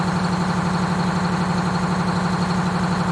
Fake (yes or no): no